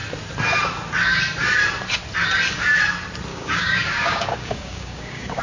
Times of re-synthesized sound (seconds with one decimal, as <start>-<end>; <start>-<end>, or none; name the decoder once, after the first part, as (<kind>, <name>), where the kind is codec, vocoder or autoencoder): 3.3-5.4 (codec, DAC)